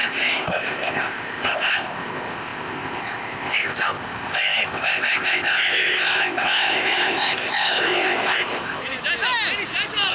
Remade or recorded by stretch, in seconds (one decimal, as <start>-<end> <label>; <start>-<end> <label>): 0.0-8.8 remade; 8.8-10.1 recorded